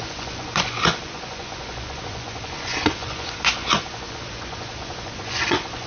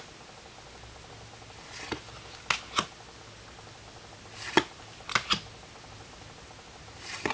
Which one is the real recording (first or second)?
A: second